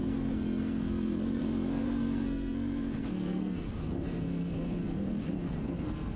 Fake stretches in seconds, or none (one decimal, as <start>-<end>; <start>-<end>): 0.0-6.2